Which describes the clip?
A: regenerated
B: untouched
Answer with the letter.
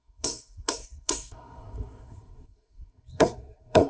A